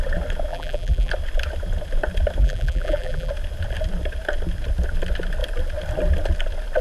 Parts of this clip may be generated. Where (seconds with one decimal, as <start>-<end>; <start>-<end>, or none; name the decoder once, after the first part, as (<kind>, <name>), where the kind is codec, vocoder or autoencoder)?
0.5-1.1 (vocoder, BigVGAN v2); 2.4-3.3